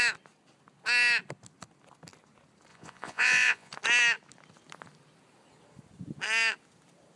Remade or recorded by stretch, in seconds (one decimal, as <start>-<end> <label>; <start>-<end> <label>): 0.0-2.7 recorded; 2.7-3.7 remade; 3.7-7.2 recorded